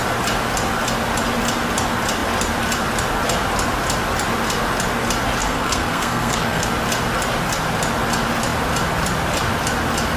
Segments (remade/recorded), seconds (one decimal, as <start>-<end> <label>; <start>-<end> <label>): 0.0-5.4 recorded; 5.4-6.7 remade; 6.7-10.2 recorded